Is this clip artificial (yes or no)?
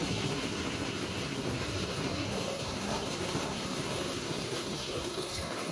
yes